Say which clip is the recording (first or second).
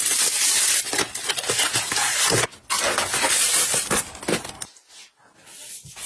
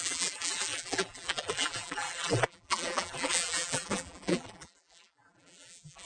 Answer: first